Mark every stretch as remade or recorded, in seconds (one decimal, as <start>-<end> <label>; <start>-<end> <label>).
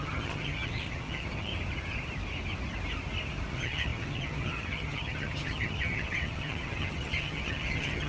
0.0-1.5 remade; 1.5-3.5 recorded; 3.5-8.1 remade